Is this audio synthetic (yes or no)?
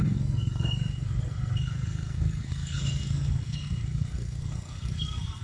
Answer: yes